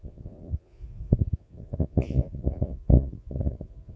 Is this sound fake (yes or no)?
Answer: yes